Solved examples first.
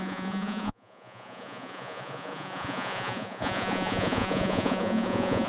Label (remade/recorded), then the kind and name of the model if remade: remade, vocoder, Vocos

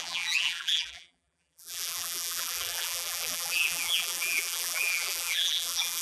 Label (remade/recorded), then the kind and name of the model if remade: remade, vocoder, BigVGAN v2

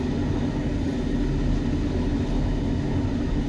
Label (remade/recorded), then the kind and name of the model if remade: recorded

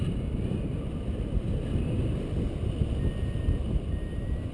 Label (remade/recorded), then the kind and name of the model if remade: recorded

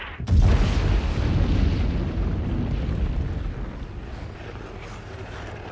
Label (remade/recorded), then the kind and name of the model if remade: recorded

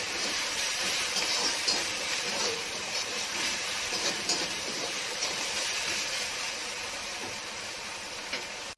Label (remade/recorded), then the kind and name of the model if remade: remade, vocoder, BigVGAN v2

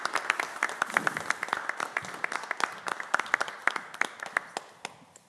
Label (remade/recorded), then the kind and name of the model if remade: recorded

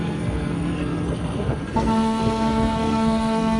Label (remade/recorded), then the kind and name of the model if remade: remade, codec, SNAC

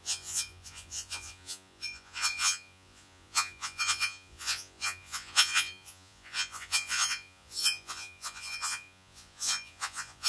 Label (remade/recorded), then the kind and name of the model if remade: remade, vocoder, Vocos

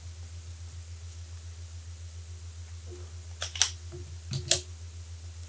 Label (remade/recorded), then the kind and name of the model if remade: recorded